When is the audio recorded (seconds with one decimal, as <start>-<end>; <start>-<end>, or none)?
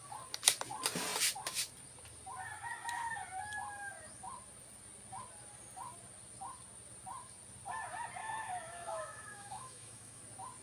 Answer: 0.0-8.2; 10.2-10.6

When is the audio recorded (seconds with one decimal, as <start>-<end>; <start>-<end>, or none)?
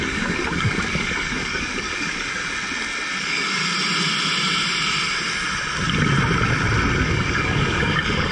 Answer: 2.4-3.2; 3.6-7.0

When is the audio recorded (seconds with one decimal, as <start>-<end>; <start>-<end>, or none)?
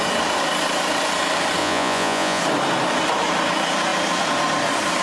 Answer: 0.0-1.6; 2.4-5.0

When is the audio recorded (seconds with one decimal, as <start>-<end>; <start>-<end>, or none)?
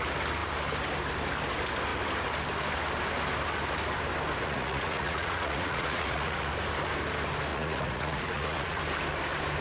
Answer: 0.0-4.4; 6.5-7.5; 8.8-9.6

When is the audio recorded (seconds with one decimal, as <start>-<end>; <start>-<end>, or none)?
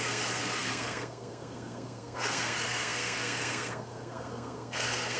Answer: none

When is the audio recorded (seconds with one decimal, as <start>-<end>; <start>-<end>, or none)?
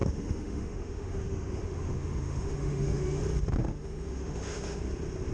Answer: 3.2-3.6; 4.8-5.3